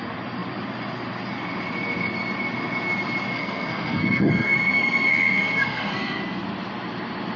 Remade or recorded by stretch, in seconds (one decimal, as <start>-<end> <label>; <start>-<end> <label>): 0.0-3.3 recorded; 3.3-6.2 remade; 6.2-7.4 recorded